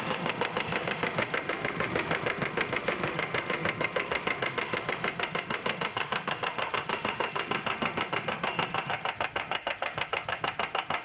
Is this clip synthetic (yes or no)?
yes